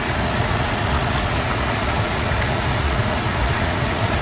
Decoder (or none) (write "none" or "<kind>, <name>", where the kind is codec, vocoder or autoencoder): vocoder, Vocos